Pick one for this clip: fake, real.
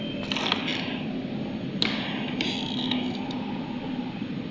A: real